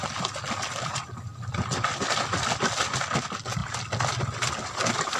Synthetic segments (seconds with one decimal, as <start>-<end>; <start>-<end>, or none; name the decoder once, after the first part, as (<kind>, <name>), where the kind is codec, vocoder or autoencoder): none